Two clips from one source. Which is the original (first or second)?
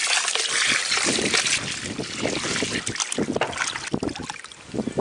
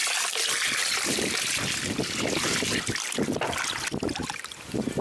first